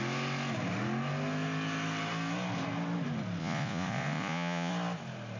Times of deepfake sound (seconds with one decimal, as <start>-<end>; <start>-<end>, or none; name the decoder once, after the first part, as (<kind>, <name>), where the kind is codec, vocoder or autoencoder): 3.4-4.7 (vocoder, Vocos)

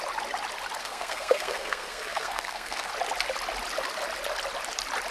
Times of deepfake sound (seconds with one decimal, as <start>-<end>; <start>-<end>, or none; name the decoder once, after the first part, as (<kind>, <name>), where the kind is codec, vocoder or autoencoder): 0.8-2.9 (codec, SNAC)

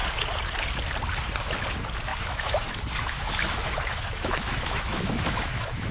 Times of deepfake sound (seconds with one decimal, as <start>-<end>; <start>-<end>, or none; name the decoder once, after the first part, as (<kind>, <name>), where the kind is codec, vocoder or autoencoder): 2.1-5.9 (autoencoder, DAC-VAE)

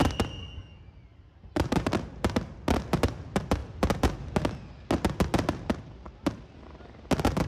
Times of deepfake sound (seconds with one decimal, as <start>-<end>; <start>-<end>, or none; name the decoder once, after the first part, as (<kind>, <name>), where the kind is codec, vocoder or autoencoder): 1.1-2.6 (vocoder, BigVGAN v2)